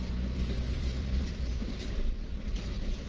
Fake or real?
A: fake